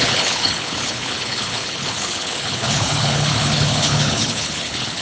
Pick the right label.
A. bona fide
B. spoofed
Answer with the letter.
B